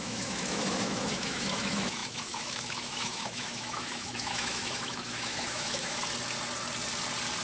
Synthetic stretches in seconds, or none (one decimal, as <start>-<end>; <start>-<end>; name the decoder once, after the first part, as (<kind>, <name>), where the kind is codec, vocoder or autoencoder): 0.0-6.0 (autoencoder, DAC-VAE)